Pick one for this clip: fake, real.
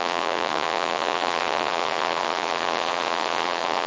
fake